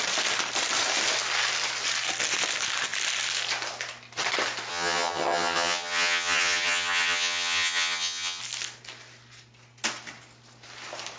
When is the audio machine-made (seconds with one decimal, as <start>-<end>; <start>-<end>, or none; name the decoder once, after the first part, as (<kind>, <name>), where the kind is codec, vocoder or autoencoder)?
4.7-8.4 (vocoder, HiFi-GAN)